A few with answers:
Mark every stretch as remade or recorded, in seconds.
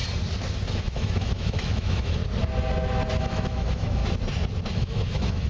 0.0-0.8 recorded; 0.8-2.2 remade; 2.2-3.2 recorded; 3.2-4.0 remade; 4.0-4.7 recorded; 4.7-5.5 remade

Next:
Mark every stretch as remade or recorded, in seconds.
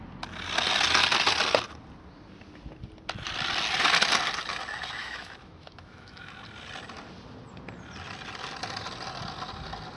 0.0-5.0 recorded; 5.0-6.2 remade; 6.2-10.0 recorded